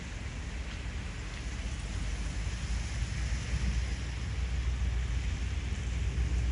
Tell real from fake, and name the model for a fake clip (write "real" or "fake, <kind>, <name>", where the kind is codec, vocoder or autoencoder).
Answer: real